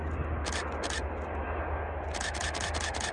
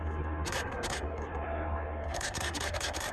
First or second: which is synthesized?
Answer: second